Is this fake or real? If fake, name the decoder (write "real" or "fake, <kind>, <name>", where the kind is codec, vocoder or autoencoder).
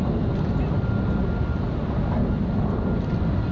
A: real